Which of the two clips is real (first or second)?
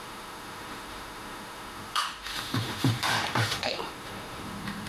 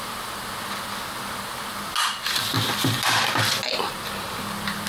second